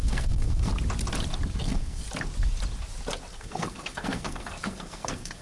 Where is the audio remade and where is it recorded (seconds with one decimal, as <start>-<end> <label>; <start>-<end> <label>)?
0.0-0.7 remade; 0.7-1.6 recorded; 1.6-2.0 remade; 2.0-3.3 recorded; 3.3-5.4 remade